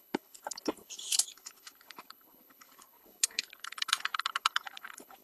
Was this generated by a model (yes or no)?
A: yes